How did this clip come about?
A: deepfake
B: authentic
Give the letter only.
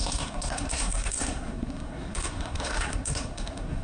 A